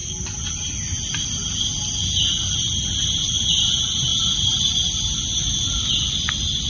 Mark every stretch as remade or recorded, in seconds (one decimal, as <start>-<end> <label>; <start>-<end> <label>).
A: 0.0-6.7 recorded